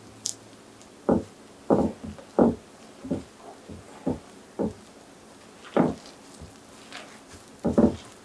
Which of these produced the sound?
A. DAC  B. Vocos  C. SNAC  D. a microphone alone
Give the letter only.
D